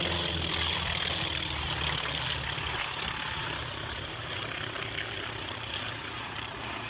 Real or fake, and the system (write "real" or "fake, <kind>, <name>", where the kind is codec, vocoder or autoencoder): real